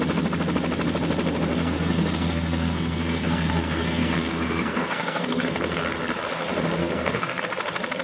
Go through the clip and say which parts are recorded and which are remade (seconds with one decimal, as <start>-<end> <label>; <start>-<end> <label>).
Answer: 0.0-1.5 recorded; 1.5-5.8 remade; 5.8-6.8 recorded; 6.8-7.4 remade; 7.4-8.0 recorded